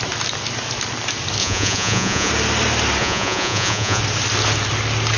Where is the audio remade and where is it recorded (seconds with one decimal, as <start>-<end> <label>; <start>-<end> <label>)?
0.0-1.4 recorded; 1.4-2.3 remade; 2.3-3.0 recorded; 3.0-4.0 remade; 4.0-5.2 recorded